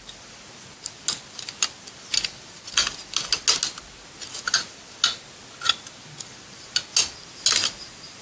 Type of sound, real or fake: real